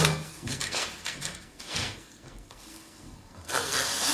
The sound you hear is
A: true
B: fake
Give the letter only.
B